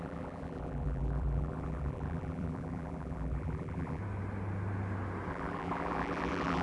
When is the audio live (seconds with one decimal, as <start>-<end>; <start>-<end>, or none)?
4.0-5.3